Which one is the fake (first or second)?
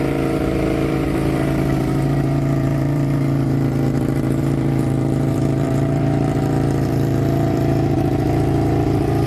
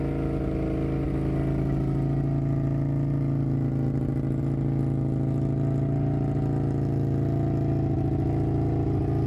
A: first